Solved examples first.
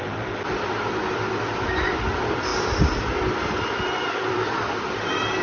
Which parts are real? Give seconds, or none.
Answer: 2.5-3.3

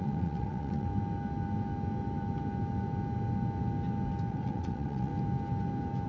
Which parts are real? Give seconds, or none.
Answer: 0.9-4.3; 5.1-6.1

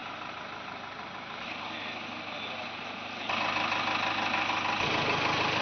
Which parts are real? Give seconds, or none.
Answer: 1.6-5.6

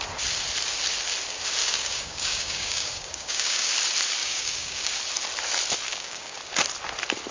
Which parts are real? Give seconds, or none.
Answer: 0.0-1.6; 3.7-4.2; 5.0-5.9; 6.4-7.3

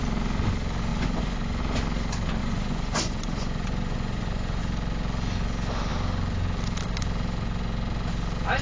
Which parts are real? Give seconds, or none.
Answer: 0.0-0.9; 1.6-2.4; 4.6-8.6

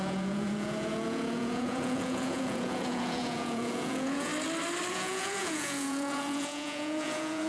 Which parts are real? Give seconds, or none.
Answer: 4.3-4.9